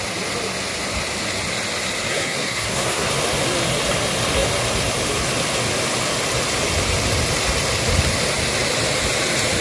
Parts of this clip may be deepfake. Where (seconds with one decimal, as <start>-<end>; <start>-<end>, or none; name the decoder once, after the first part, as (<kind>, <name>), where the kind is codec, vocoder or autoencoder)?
2.1-3.1 (codec, SNAC)